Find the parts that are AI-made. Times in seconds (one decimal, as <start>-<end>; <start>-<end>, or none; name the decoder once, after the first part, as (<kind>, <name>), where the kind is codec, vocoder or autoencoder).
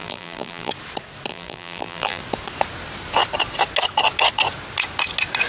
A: 0.0-0.7 (vocoder, BigVGAN v2); 1.3-2.2